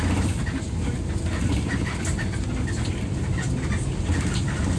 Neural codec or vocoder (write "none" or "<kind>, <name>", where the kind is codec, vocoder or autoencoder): none